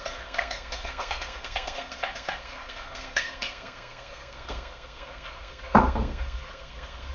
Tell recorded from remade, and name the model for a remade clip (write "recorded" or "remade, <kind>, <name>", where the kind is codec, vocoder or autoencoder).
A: remade, codec, SNAC